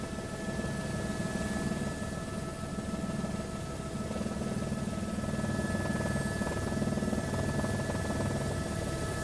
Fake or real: real